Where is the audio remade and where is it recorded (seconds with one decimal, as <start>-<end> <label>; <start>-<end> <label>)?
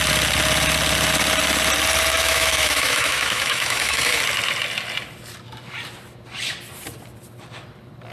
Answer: 0.0-2.1 recorded; 2.1-4.2 remade; 4.2-8.1 recorded